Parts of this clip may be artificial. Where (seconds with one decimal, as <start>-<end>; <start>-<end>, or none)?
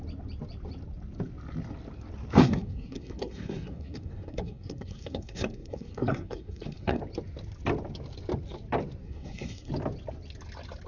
2.4-7.0; 9.0-9.7